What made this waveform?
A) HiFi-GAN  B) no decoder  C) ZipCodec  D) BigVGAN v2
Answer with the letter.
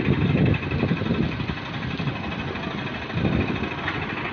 B